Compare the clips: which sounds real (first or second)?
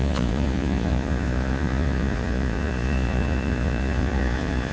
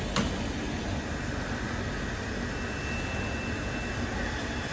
second